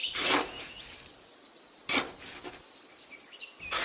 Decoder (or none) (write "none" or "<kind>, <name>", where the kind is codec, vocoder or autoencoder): none